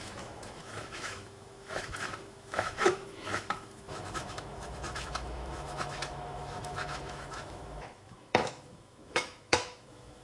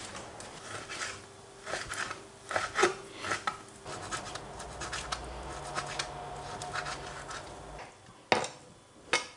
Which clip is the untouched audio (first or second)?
second